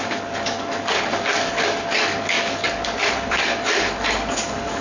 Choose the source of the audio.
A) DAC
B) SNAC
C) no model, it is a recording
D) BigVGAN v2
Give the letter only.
A